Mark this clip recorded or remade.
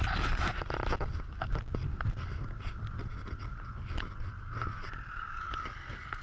recorded